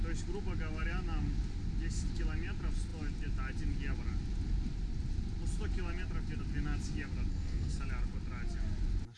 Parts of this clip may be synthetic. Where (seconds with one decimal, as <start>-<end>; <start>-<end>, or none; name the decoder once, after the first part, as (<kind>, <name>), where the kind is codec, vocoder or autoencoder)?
7.3-7.8 (codec, SNAC)